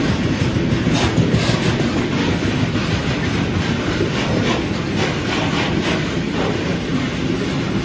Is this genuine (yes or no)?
yes